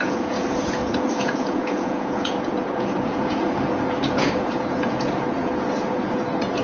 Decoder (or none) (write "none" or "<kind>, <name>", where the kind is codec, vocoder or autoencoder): vocoder, Vocos